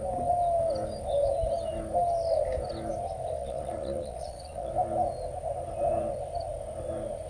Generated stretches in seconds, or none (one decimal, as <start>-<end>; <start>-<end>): 3.4-4.7